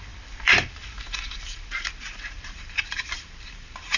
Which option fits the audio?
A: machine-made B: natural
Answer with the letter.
A